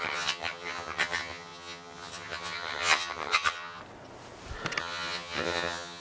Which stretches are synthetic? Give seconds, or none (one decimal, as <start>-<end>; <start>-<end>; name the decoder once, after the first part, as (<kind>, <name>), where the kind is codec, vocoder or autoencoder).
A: 0.0-3.8 (vocoder, HiFi-GAN); 4.8-6.0